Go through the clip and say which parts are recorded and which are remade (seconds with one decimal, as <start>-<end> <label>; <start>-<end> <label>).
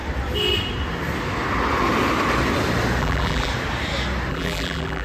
0.0-3.0 recorded; 3.0-3.5 remade; 3.5-4.3 recorded; 4.3-5.0 remade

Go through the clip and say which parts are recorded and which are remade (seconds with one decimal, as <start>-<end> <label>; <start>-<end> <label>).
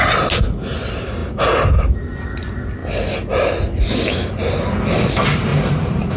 0.0-5.5 recorded; 5.5-6.2 remade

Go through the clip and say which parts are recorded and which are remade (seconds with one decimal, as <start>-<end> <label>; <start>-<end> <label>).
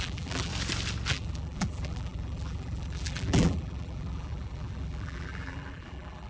0.0-0.5 remade; 0.5-1.1 recorded; 1.1-6.3 remade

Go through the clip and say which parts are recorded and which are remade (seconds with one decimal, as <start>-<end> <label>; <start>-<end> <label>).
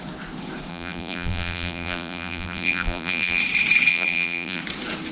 0.0-0.7 recorded; 0.7-3.4 remade; 3.4-3.9 recorded; 3.9-4.6 remade; 4.6-5.1 recorded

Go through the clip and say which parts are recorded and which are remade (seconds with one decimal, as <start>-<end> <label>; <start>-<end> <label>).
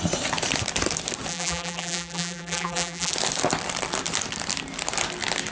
0.0-1.3 recorded; 1.3-3.1 remade; 3.1-5.5 recorded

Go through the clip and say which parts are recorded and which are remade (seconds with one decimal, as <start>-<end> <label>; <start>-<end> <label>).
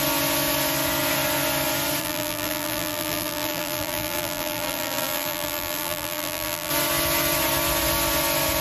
0.0-2.0 recorded; 2.0-6.7 remade; 6.7-8.6 recorded